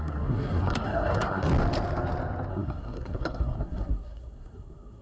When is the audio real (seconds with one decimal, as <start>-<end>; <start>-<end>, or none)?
1.5-2.5